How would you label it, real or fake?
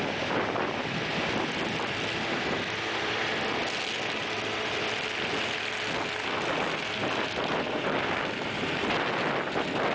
real